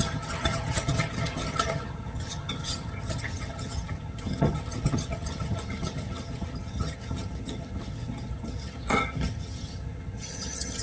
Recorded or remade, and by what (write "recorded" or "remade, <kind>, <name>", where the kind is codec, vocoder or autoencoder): remade, vocoder, HiFi-GAN